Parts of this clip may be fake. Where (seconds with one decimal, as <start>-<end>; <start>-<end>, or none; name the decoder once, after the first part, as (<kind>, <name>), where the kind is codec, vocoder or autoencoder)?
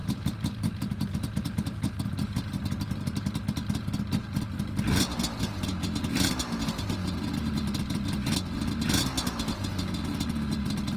0.0-2.2 (vocoder, BigVGAN v2)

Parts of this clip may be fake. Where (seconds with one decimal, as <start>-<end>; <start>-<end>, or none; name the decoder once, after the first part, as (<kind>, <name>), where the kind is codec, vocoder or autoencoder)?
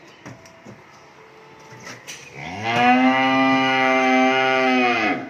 2.4-5.3 (autoencoder, DAC-VAE)